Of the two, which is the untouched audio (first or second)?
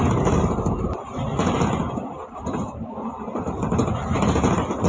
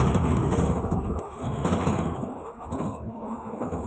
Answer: first